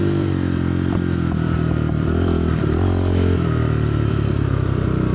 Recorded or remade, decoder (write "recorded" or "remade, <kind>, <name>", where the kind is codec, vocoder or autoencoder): remade, vocoder, BigVGAN v2